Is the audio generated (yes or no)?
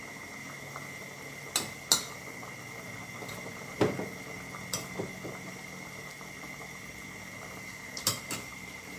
no